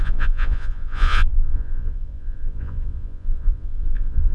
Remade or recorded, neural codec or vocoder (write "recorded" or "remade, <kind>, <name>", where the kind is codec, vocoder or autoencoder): remade, vocoder, Vocos